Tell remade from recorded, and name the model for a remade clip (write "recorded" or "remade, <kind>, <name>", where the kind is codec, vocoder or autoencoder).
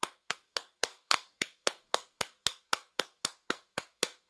remade, codec, SNAC